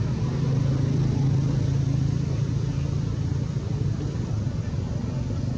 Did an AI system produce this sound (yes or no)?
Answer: no